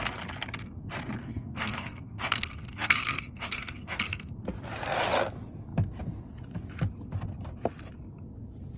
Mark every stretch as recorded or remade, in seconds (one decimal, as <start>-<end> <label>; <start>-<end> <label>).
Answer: 0.0-1.2 recorded; 1.2-4.3 remade; 4.3-8.8 recorded